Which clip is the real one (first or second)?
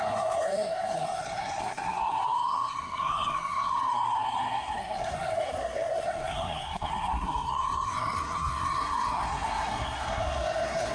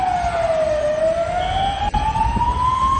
second